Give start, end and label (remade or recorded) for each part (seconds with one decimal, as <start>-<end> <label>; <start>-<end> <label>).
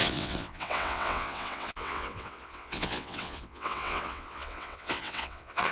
0.0-5.7 remade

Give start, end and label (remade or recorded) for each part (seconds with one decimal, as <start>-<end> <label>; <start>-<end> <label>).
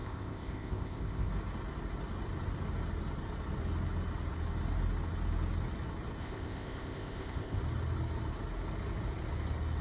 0.0-1.3 remade; 1.3-6.2 recorded; 6.2-7.6 remade; 7.6-9.8 recorded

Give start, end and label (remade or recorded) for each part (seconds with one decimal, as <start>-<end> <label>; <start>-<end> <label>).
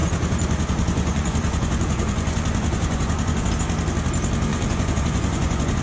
0.0-3.5 remade; 3.5-4.5 recorded; 4.5-5.8 remade